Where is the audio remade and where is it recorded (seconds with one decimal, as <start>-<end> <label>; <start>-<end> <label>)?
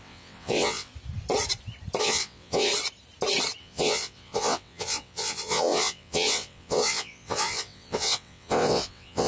0.0-0.9 remade; 0.9-2.0 recorded; 2.0-2.7 remade; 2.7-3.6 recorded; 3.6-9.3 remade